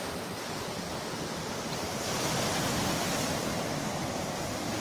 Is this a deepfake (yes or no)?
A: no